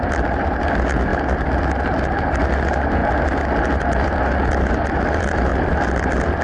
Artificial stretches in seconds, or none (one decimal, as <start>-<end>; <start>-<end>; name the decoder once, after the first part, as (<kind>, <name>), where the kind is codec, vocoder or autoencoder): none